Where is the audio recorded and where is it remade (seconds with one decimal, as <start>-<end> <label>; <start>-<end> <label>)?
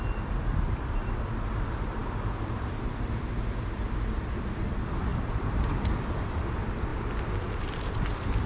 0.0-6.9 remade; 6.9-7.5 recorded; 7.5-8.5 remade